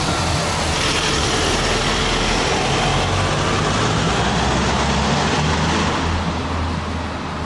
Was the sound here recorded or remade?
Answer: recorded